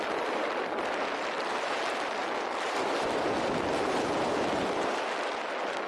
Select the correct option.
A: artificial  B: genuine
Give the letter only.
B